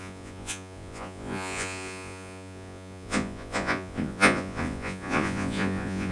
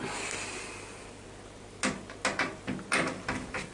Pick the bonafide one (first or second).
second